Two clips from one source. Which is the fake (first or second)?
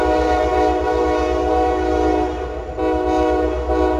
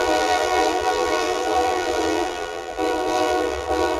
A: second